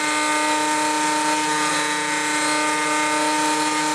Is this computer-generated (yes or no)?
no